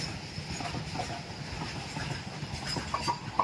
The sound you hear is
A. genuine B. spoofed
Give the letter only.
A